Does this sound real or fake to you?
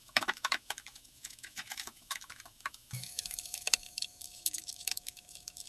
fake